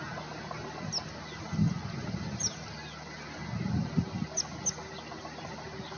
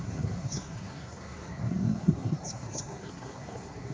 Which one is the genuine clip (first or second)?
first